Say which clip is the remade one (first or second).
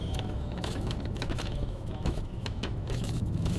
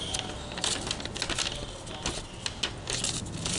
first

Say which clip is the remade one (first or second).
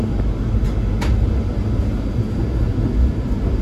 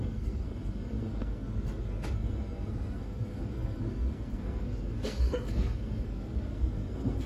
second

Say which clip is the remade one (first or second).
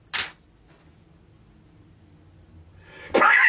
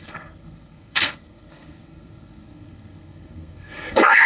second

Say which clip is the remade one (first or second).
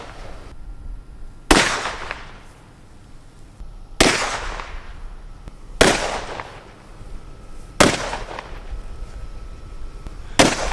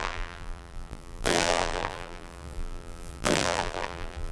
second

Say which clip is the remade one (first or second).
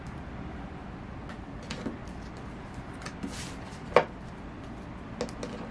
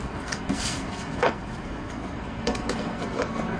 second